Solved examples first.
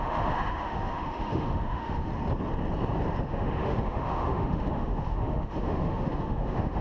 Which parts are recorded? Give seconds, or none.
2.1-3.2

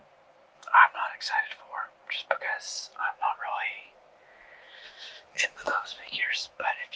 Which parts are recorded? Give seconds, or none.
0.0-2.9

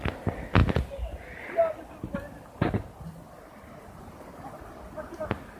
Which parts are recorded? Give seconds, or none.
0.0-5.6

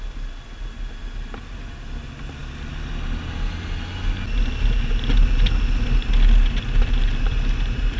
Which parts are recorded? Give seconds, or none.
0.0-8.0

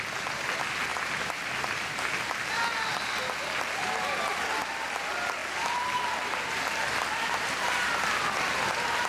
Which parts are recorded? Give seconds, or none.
0.0-9.1

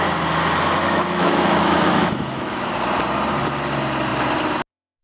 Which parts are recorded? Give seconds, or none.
0.0-0.8; 2.6-5.0